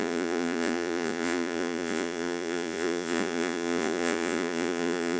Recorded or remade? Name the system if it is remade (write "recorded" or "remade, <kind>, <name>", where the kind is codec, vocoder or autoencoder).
remade, vocoder, Vocos